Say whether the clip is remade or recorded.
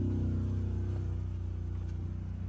recorded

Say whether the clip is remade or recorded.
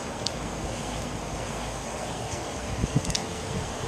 remade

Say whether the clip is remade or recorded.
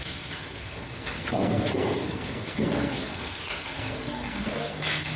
remade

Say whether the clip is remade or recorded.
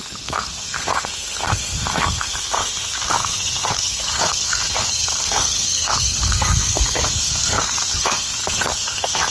remade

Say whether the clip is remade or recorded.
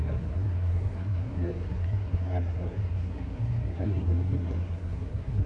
remade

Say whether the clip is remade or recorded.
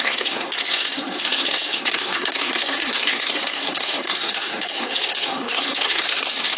remade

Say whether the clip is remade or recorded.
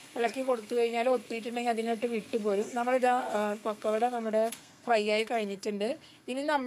remade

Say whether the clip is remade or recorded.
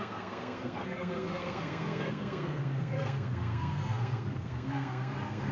remade